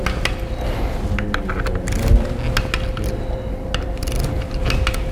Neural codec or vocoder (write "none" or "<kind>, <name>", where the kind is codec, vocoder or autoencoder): none